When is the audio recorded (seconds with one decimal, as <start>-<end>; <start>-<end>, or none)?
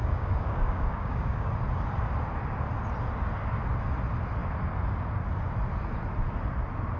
1.5-7.0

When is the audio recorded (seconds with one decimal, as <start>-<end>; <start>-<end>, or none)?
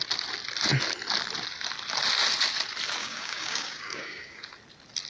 0.0-3.0; 4.5-5.1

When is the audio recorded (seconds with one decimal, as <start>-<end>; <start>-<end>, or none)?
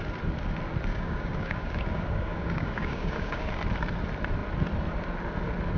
0.0-0.9; 3.5-5.8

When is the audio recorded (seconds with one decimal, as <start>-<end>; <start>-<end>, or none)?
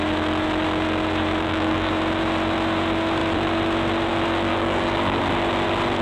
0.0-1.4; 1.9-4.5; 5.2-6.0